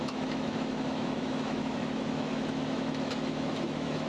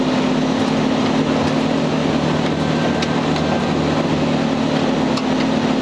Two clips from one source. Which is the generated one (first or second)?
first